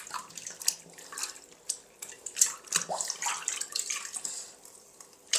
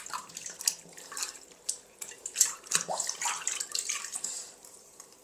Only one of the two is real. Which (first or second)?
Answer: first